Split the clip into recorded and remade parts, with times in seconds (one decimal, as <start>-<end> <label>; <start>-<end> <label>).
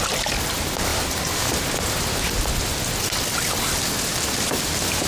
0.0-5.1 recorded